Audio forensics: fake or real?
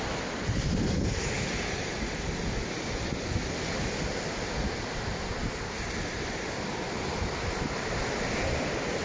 real